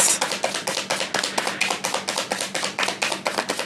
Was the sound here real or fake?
real